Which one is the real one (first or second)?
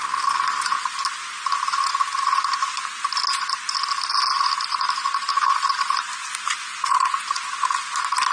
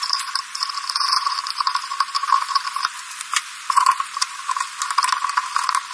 first